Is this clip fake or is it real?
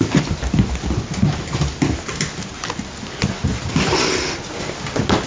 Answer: real